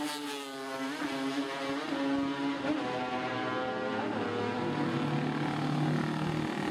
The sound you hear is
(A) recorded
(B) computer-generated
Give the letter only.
A